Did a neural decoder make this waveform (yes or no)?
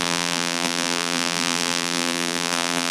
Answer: yes